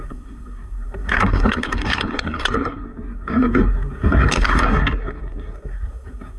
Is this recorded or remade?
remade